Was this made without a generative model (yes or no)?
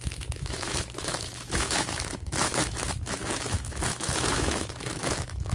no